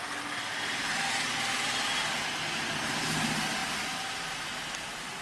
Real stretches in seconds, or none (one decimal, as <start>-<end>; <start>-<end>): 0.0-5.2